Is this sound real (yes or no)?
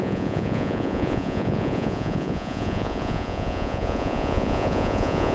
no